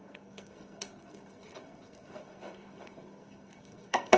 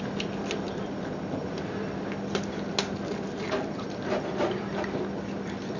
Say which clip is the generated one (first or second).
first